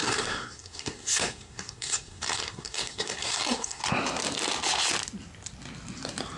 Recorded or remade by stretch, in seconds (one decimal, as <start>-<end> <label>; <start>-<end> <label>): 0.0-3.8 remade; 3.8-6.4 recorded